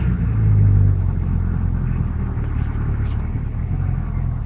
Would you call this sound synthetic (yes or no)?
no